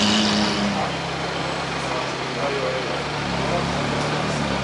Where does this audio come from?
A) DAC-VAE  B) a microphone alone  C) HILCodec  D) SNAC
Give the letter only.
B